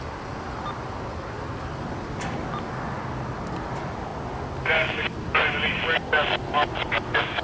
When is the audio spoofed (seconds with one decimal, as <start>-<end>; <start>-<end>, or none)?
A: none